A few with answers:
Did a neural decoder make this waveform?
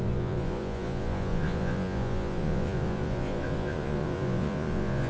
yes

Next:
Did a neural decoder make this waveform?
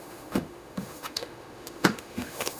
yes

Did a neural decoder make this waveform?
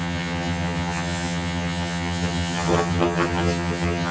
yes